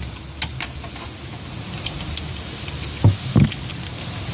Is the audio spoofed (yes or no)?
no